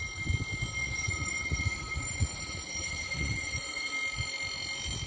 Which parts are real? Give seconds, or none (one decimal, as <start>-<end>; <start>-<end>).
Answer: 0.0-0.8; 3.9-5.1